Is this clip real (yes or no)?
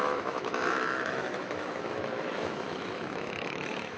no